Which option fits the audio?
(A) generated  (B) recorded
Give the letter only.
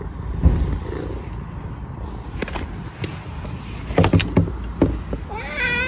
B